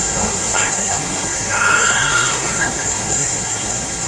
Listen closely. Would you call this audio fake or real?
fake